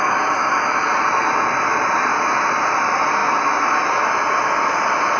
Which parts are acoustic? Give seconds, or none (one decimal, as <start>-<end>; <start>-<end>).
0.0-5.2